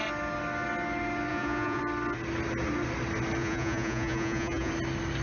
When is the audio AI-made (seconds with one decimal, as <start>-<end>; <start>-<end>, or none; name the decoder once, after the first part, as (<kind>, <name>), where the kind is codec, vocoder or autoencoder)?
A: 1.3-1.8 (vocoder, Vocos); 3.4-4.7